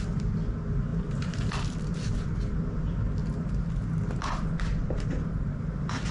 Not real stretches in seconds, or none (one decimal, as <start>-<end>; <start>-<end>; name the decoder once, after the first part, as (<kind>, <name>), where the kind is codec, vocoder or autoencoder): 0.9-1.5 (vocoder, BigVGAN v2)